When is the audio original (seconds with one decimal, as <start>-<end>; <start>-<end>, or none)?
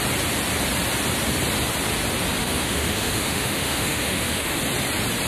0.0-2.4; 4.6-5.3